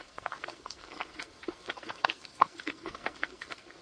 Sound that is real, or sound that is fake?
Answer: fake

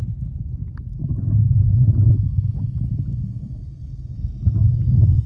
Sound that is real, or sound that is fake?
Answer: real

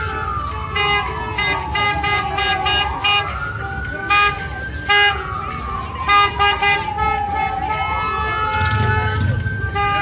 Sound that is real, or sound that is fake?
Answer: real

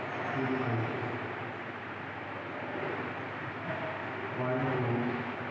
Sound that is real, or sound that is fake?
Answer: real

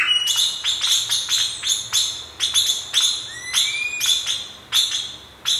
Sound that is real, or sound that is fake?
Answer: real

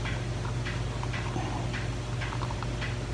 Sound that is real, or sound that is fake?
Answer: real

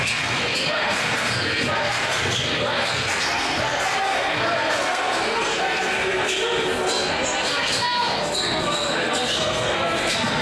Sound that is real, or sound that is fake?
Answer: fake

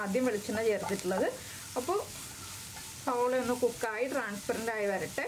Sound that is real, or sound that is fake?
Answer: real